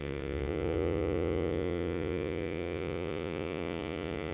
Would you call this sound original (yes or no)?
no